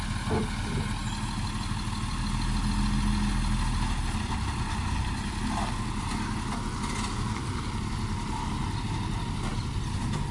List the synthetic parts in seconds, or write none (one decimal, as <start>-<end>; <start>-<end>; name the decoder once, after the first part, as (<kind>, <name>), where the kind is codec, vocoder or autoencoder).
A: none